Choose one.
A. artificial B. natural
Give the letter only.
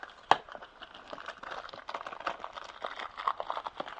B